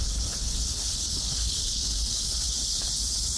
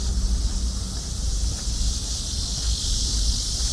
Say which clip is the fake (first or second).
first